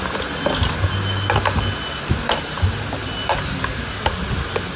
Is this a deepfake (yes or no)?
no